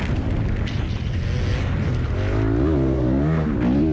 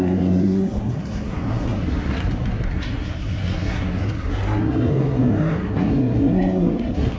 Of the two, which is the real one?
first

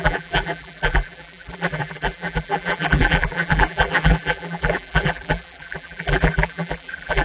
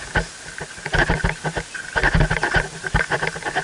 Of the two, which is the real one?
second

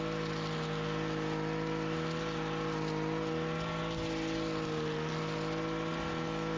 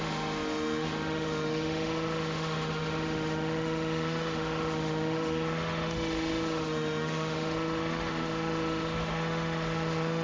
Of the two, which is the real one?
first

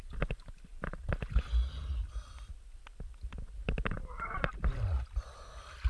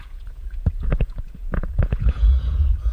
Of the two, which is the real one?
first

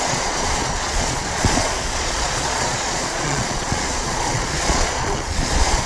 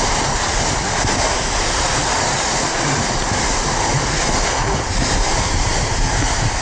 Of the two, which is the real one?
second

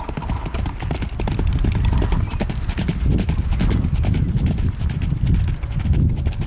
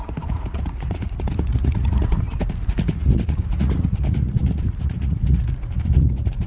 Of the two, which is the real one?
first